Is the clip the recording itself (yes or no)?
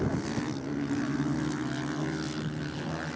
yes